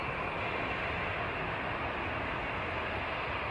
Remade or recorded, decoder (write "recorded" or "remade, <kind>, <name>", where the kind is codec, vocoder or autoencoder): recorded